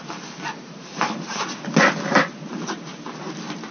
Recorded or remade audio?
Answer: recorded